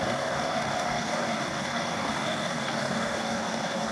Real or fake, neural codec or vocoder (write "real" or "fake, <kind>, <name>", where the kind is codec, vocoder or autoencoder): fake, codec, DAC